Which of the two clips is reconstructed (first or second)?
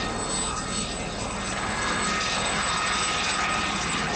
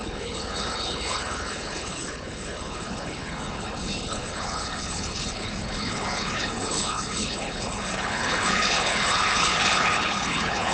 second